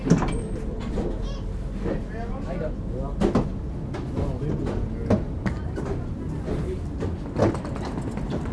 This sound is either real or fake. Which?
real